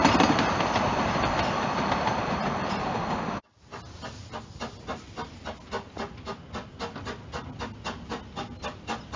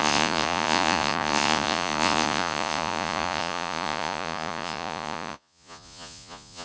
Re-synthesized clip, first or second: second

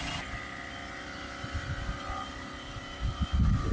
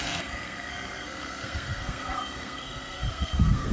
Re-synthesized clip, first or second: second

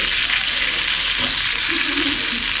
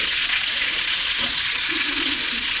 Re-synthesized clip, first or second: second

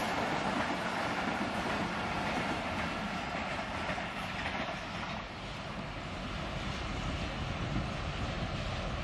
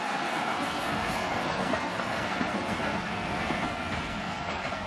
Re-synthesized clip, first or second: second